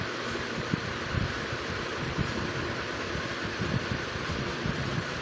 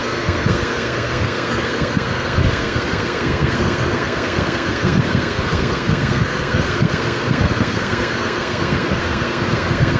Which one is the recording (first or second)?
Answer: first